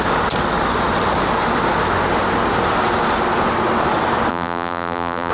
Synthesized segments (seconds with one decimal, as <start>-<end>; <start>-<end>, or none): 4.3-5.3